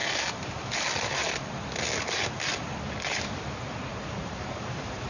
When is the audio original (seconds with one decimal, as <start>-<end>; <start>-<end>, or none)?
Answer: 0.0-3.9

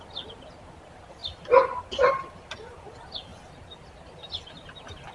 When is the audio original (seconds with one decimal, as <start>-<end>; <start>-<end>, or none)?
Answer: 0.0-1.2; 2.8-5.1

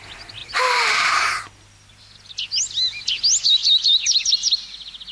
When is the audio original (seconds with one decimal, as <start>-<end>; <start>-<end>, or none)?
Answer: 0.0-0.4; 1.4-5.1

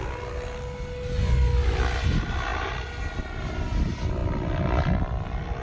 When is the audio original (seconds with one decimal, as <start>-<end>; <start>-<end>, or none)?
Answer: 0.0-5.6

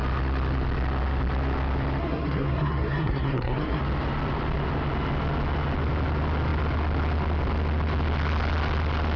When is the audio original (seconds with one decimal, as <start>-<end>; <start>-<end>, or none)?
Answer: 0.0-2.0; 3.8-9.2

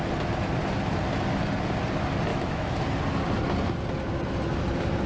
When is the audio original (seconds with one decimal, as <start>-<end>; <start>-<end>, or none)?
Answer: 0.0-2.3; 2.8-5.1

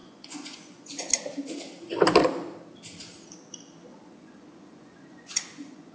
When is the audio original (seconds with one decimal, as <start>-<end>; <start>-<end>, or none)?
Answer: 1.1-3.9

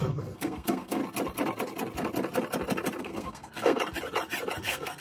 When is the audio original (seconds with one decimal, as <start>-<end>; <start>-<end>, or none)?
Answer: 1.0-3.0; 3.8-4.6